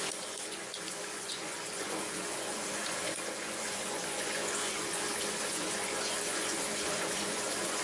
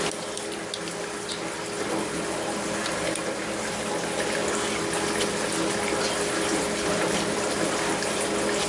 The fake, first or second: first